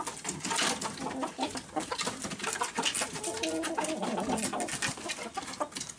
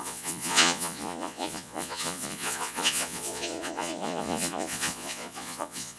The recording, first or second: first